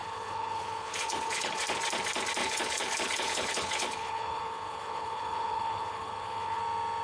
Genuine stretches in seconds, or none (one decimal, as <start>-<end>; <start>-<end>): 1.6-2.4; 6.6-7.0